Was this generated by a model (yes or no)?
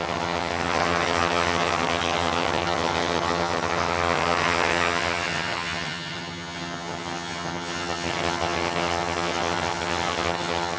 yes